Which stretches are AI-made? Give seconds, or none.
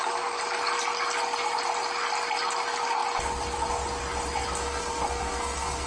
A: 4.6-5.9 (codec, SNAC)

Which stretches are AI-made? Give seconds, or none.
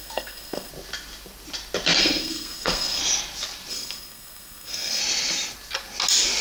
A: 0.0-0.7 (codec, SNAC); 2.0-3.0; 3.7-5.0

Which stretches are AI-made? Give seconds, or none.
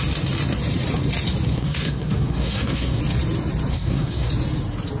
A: 1.5-3.0 (codec, SNAC); 3.7-4.3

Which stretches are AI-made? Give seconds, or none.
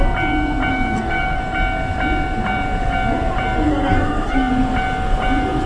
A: 0.7-1.4 (codec, SNAC); 3.7-4.5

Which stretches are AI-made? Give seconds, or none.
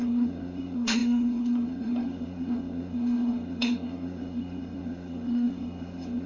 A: 0.0-6.3 (codec, SNAC)